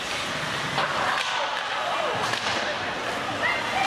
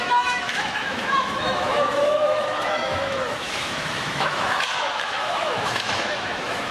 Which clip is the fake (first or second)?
second